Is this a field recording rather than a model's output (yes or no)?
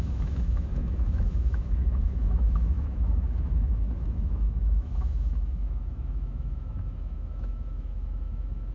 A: no